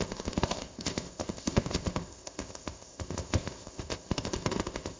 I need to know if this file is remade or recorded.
remade